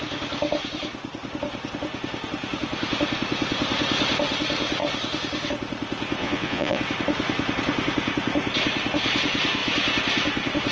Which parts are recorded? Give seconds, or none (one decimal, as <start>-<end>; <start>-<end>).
0.0-6.2; 6.8-10.7

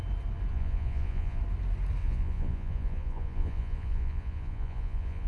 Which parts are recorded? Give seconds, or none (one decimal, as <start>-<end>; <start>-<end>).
0.0-0.5; 1.4-2.0

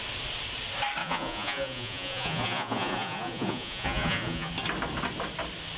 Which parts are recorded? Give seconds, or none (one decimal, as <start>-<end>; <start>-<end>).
0.0-1.0; 4.5-5.8

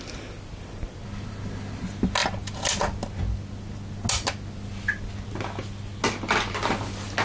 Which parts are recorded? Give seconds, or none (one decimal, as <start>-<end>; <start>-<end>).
0.0-7.2

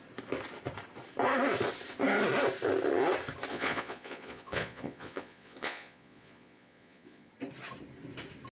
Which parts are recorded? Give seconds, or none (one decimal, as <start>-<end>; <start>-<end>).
0.0-3.5; 7.3-8.5

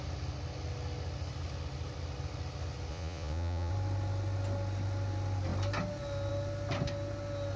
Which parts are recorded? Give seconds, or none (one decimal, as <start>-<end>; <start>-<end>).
0.0-2.9; 3.7-7.6